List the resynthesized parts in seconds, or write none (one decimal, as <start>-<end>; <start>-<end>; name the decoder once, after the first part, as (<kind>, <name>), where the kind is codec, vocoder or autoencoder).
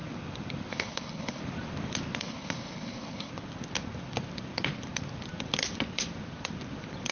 0.7-1.4 (codec, HILCodec); 2.2-3.3